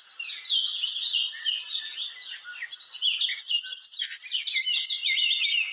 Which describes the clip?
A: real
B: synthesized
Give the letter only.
A